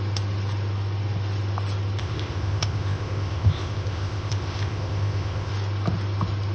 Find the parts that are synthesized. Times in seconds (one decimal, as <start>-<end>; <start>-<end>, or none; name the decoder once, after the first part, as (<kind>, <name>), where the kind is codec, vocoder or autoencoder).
2.0-5.5 (codec, ZipCodec)